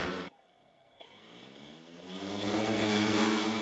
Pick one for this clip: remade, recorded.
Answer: remade